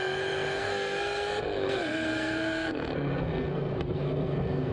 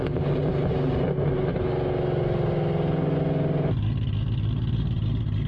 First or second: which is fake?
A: first